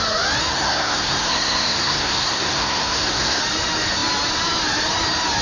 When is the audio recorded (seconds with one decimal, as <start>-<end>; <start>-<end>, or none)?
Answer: 0.0-0.5; 3.4-5.4